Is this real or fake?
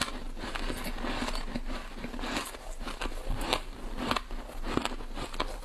real